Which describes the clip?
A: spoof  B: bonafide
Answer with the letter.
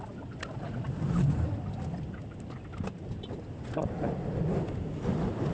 B